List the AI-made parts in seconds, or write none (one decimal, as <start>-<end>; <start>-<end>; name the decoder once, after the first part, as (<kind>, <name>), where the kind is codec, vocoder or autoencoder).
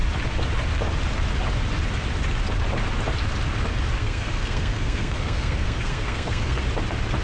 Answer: 4.0-6.6 (codec, SNAC)